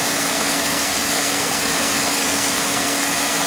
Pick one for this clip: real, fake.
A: fake